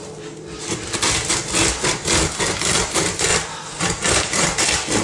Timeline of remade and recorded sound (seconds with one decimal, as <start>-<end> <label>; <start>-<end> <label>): 0.0-3.3 recorded; 3.3-3.8 remade; 3.8-5.0 recorded